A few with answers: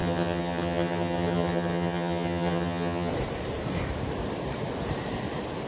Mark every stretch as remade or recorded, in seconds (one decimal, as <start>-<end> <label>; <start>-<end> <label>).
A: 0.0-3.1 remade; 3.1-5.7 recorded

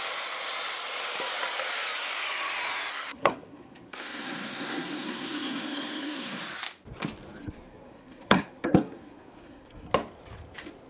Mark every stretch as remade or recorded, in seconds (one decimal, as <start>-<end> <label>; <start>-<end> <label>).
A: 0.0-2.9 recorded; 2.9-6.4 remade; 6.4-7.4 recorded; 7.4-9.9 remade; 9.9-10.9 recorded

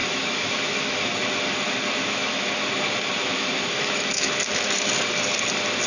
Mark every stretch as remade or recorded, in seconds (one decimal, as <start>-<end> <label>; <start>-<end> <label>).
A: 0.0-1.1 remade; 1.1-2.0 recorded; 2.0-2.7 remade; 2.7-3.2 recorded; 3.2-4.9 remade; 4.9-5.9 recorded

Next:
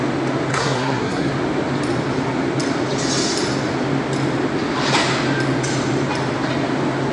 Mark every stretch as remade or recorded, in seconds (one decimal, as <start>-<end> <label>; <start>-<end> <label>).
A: 0.0-0.5 recorded; 0.5-1.3 remade; 1.3-7.1 recorded

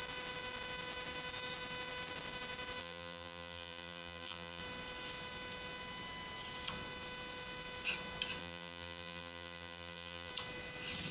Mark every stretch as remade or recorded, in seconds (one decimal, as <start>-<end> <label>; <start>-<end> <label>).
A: 0.0-2.8 recorded; 2.8-4.6 remade; 4.6-8.4 recorded; 8.4-10.3 remade; 10.3-11.1 recorded